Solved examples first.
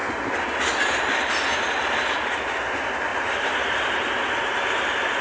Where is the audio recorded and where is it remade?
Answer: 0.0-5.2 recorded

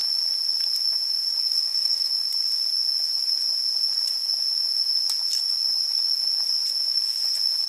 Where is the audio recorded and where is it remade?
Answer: 0.0-1.5 recorded; 1.5-2.1 remade; 2.1-7.7 recorded

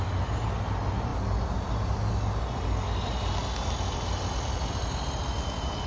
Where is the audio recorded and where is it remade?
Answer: 0.0-5.9 recorded

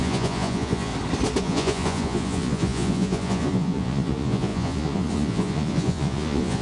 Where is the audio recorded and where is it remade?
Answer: 0.0-0.9 remade; 0.9-1.4 recorded; 1.4-6.6 remade